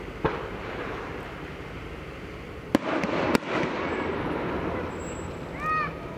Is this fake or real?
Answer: real